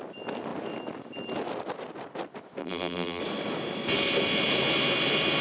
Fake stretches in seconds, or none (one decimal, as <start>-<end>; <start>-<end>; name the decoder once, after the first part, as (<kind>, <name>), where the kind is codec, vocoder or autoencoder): 2.6-3.2 (vocoder, BigVGAN v2)